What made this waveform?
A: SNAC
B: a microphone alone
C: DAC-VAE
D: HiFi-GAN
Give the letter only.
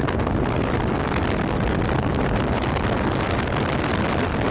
B